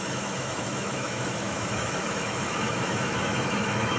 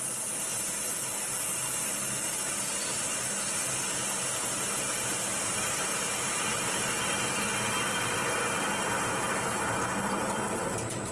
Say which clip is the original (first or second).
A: second